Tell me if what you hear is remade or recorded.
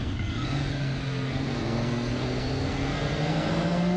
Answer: remade